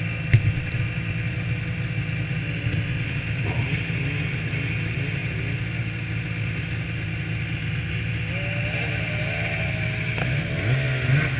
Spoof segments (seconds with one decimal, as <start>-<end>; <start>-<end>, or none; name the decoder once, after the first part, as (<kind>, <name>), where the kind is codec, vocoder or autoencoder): none